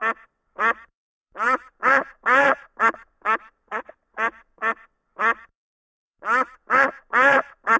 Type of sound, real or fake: fake